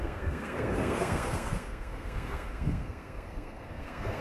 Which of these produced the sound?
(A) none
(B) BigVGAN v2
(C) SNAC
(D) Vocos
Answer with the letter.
C